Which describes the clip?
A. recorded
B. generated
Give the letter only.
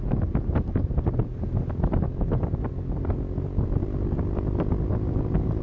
A